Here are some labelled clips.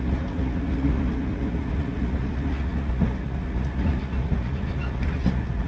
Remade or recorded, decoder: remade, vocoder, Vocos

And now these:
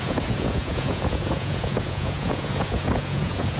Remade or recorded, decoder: remade, vocoder, Vocos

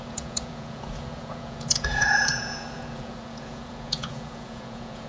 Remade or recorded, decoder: remade, vocoder, Vocos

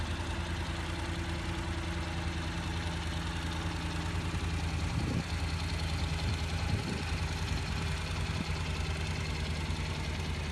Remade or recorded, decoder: recorded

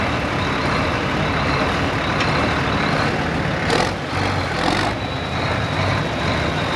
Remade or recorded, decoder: recorded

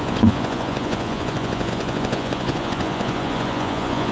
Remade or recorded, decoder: remade, vocoder, Vocos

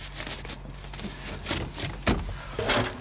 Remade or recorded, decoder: recorded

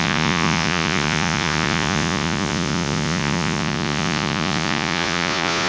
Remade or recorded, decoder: remade, vocoder, Vocos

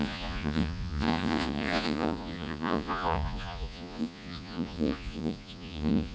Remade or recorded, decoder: remade, vocoder, Vocos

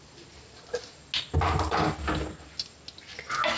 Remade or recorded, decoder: recorded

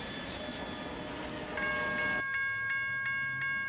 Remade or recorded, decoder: recorded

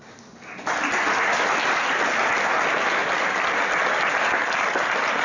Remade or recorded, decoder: recorded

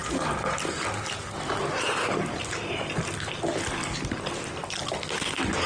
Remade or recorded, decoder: recorded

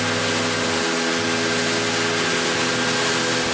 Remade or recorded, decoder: recorded